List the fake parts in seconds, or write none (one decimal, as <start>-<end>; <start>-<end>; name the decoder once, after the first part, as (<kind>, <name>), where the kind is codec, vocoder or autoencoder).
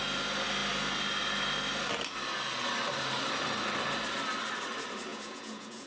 5.1-5.9 (vocoder, Vocos)